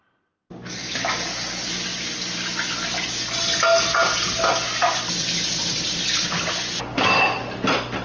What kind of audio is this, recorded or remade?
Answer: recorded